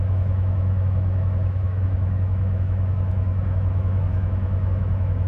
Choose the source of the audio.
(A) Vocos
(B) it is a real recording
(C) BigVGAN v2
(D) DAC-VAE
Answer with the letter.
D